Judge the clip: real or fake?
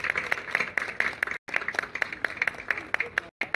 real